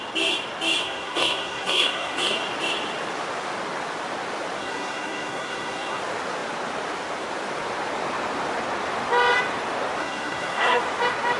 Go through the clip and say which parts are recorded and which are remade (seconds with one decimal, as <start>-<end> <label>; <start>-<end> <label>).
0.0-0.8 recorded; 0.8-2.4 remade; 2.4-4.6 recorded; 4.6-6.0 remade; 6.0-10.0 recorded; 10.0-10.8 remade; 10.8-11.4 recorded